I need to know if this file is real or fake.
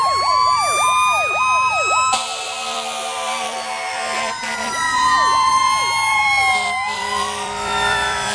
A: fake